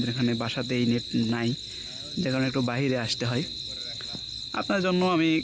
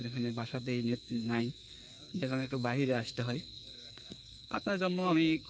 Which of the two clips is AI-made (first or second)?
second